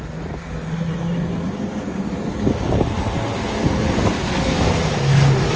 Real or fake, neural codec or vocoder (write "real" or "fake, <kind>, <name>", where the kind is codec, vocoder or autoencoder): real